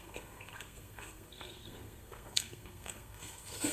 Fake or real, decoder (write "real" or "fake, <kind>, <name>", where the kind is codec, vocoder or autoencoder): fake, codec, SNAC